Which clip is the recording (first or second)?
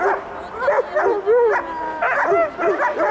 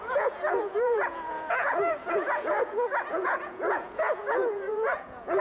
first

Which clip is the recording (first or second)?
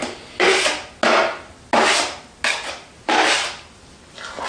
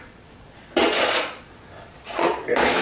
first